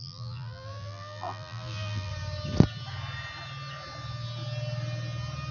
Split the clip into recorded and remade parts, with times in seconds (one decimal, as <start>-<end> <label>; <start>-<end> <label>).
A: 0.0-2.1 remade; 2.1-5.5 recorded